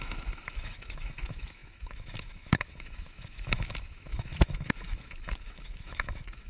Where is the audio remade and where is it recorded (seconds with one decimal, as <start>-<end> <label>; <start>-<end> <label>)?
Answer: 0.0-6.5 remade